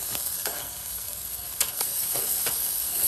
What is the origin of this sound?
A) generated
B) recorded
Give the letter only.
A